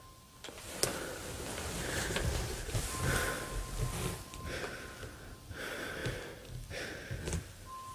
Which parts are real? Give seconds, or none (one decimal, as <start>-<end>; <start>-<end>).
0.0-7.9